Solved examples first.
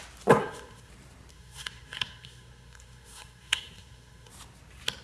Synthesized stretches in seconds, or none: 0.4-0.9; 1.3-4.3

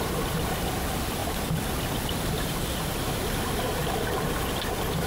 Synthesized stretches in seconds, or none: none

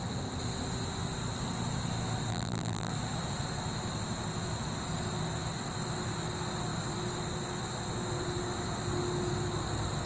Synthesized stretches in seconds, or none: 2.3-2.9

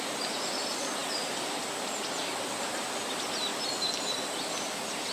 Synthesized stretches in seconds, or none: none

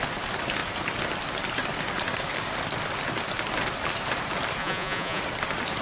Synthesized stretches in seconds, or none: 4.6-5.2

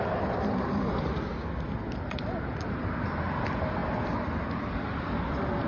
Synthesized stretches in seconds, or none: none

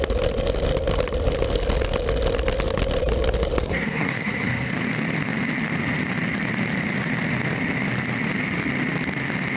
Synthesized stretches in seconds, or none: 3.6-4.7

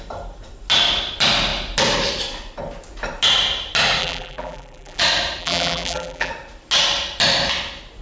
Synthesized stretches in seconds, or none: 4.0-5.0; 5.4-6.3